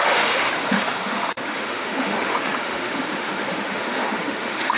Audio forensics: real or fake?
fake